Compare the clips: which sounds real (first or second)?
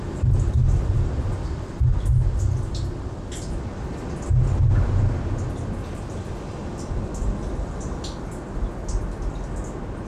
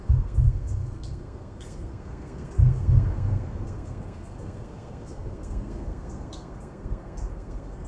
first